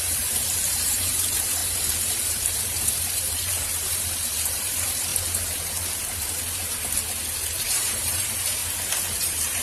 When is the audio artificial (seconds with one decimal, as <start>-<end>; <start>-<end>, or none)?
0.0-1.6; 2.6-5.1; 7.6-8.6; 9.2-9.6